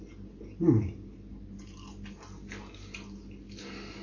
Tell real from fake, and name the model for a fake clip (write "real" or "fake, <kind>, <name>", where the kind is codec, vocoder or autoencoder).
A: real